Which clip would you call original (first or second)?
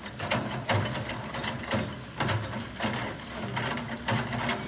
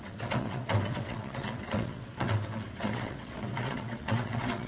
first